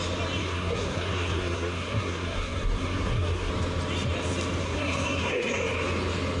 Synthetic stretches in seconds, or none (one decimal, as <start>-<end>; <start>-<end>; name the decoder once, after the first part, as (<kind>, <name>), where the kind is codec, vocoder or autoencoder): 0.4-3.5 (codec, SNAC); 4.6-5.6